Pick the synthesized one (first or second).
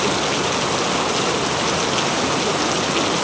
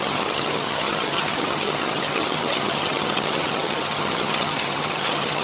second